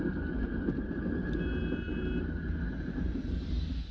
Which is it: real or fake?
real